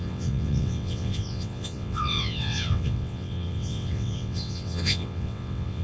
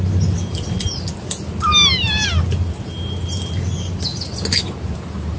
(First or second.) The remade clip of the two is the first